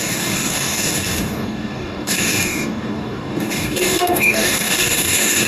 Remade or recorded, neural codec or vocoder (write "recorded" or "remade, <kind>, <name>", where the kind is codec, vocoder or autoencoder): remade, codec, DAC